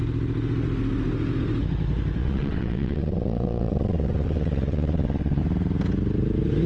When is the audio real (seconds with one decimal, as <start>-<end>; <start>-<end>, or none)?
0.0-2.2; 5.4-6.7